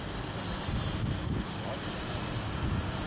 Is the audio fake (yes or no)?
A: no